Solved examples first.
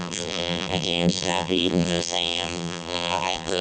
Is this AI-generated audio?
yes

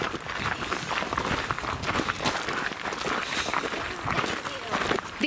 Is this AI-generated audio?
no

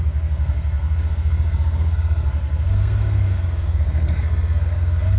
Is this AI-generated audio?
yes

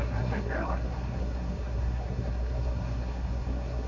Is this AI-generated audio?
yes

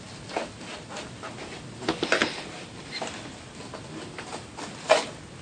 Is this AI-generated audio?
no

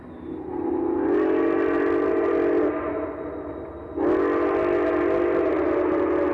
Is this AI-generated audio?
no